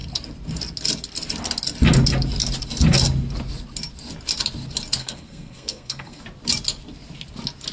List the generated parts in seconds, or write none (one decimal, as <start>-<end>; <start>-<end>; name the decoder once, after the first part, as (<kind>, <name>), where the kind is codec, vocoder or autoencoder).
5.0-6.2 (codec, SNAC)